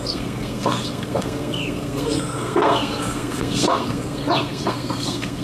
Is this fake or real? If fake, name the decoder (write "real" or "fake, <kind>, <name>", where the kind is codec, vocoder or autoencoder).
fake, codec, SNAC